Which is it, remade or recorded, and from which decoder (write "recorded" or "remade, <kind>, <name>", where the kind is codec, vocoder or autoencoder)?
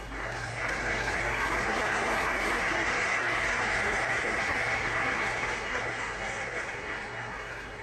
remade, codec, SNAC